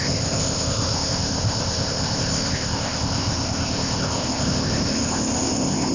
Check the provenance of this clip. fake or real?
fake